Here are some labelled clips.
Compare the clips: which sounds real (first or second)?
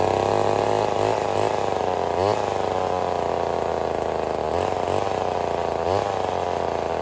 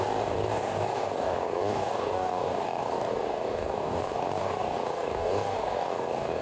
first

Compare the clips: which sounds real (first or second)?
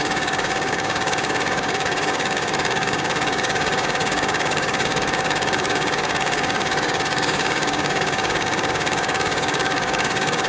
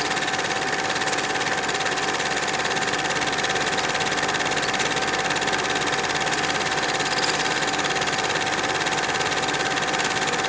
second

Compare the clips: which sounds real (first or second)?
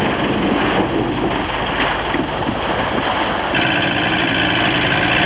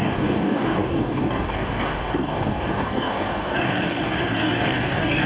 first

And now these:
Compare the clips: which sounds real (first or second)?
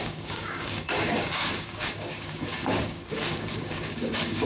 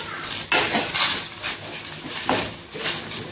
second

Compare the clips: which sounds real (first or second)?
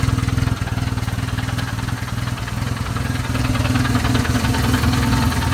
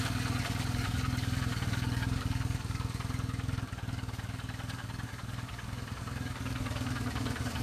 first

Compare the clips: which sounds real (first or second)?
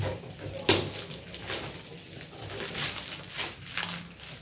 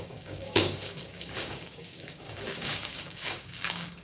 first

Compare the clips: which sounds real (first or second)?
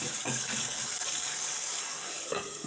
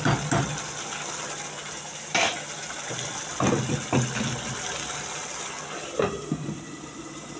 second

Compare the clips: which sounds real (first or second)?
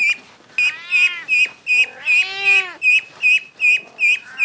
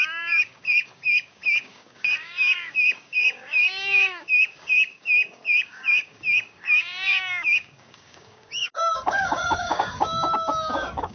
first